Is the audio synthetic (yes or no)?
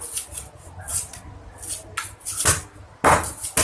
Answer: no